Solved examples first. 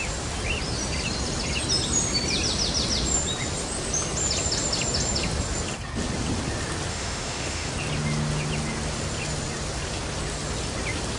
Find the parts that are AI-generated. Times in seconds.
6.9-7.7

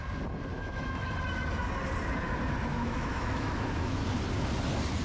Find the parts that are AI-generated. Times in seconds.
0.5-1.1; 2.7-4.0

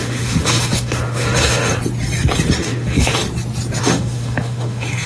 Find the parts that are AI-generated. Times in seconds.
0.0-1.7; 2.6-3.2; 3.8-5.1

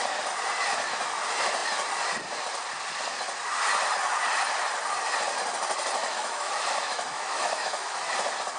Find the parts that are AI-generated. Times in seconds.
6.0-8.0